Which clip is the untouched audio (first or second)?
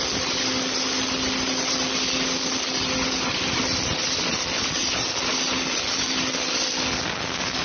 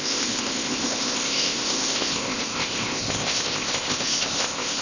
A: first